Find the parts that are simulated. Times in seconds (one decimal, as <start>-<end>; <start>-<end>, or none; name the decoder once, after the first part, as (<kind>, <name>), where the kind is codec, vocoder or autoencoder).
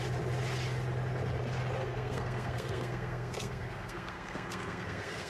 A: 1.8-5.3 (codec, SNAC)